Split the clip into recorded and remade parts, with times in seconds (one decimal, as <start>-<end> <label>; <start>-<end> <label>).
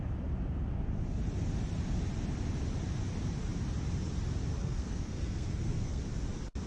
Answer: 0.0-4.5 recorded; 4.5-6.0 remade; 6.0-6.7 recorded